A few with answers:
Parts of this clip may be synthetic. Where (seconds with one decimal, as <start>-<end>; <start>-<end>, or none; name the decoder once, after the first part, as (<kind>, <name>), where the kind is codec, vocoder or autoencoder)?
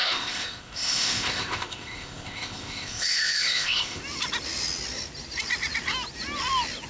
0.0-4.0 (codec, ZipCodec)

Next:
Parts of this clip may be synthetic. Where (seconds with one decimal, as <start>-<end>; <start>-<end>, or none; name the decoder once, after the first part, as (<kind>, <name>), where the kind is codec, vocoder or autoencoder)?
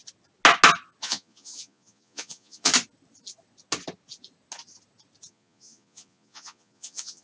1.0-2.7 (vocoder, Vocos); 5.3-7.2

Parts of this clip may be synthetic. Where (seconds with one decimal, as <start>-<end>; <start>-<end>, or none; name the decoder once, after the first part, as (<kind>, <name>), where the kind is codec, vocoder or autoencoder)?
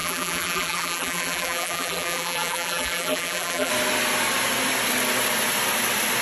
0.0-3.7 (vocoder, BigVGAN v2)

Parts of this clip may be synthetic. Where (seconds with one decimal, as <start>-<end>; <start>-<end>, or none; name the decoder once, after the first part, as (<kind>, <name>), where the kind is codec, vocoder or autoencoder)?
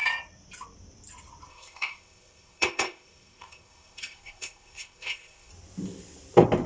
1.5-5.5 (codec, ZipCodec)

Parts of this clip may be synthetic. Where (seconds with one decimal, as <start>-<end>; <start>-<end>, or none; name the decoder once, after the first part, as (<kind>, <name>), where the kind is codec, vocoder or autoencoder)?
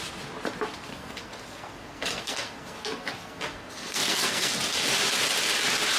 0.9-4.5 (codec, SNAC)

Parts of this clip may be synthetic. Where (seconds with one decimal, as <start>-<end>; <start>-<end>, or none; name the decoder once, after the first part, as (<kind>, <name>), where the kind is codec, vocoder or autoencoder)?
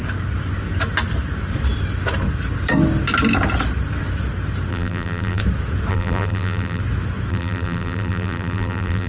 4.7-5.4 (vocoder, BigVGAN v2); 5.9-6.8; 7.3-9.1